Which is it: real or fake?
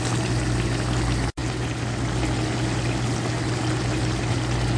real